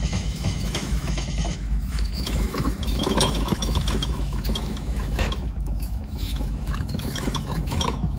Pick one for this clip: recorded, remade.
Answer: remade